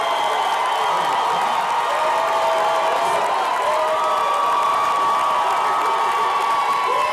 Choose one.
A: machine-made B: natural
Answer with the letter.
B